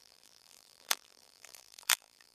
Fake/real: fake